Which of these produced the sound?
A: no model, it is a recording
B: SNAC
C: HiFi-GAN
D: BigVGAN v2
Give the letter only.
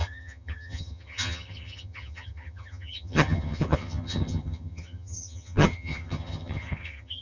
C